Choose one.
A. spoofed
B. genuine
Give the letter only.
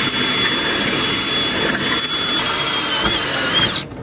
B